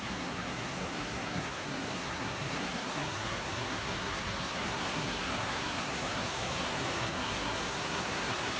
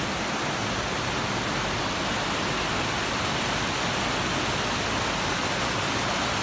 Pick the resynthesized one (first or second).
first